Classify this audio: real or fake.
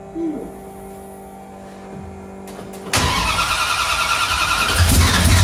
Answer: real